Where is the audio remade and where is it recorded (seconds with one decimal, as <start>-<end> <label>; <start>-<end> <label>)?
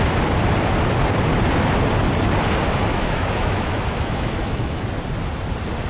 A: 0.0-2.9 recorded; 2.9-4.8 remade; 4.8-5.9 recorded